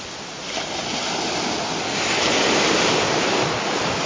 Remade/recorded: recorded